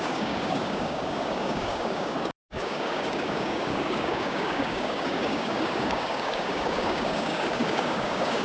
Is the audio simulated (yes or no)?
yes